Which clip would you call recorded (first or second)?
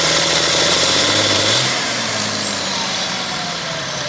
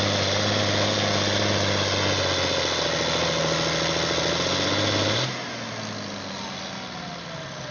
second